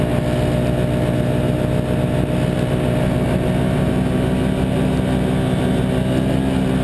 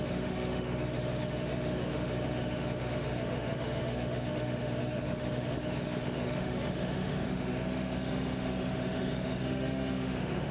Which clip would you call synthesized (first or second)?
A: second